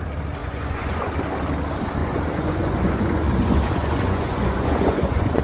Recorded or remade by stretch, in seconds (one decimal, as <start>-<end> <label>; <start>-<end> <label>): 0.0-0.4 recorded; 0.4-1.1 remade; 1.1-2.0 recorded; 2.0-5.4 remade